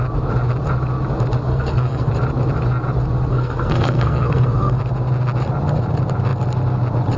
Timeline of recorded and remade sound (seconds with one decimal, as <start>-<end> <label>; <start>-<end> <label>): 0.0-1.5 recorded; 1.5-2.1 remade; 2.1-3.3 recorded; 3.3-4.8 remade; 4.8-7.2 recorded